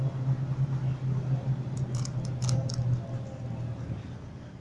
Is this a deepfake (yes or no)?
no